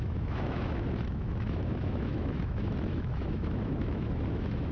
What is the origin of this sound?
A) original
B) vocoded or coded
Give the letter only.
B